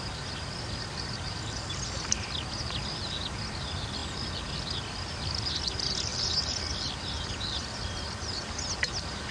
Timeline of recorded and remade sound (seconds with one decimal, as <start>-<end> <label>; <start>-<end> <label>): 0.0-9.3 recorded